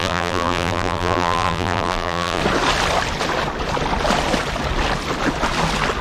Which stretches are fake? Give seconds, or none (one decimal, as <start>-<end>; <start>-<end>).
0.0-2.4